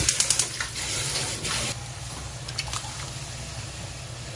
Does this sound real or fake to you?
real